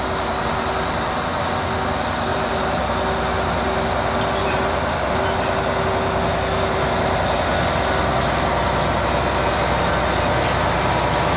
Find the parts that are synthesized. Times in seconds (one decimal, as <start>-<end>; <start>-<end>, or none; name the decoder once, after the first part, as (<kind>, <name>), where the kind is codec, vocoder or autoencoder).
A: 2.3-2.8 (vocoder, BigVGAN v2); 4.4-5.1